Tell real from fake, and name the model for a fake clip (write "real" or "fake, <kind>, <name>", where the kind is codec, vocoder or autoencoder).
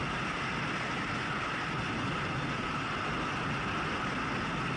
real